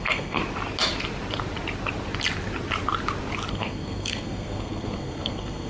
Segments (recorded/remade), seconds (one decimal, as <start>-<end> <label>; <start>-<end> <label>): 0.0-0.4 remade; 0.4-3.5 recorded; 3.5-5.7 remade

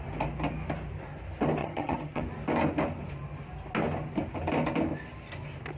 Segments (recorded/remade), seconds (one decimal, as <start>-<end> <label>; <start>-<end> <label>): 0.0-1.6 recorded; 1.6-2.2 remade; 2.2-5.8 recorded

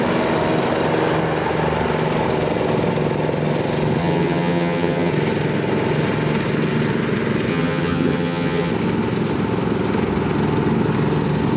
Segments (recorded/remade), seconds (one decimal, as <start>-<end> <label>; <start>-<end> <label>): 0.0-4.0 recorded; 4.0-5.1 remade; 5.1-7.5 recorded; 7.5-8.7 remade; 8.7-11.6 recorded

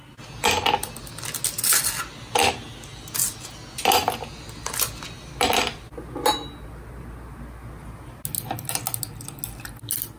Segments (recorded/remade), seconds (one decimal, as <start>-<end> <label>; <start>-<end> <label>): 0.0-10.2 recorded

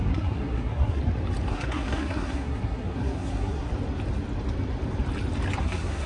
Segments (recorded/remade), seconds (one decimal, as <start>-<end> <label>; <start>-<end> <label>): 0.0-1.0 remade; 1.0-1.5 recorded; 1.5-3.7 remade; 3.7-5.6 recorded; 5.6-6.1 remade